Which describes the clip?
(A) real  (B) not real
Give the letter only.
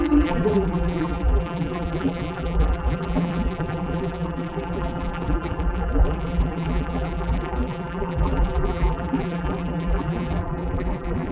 B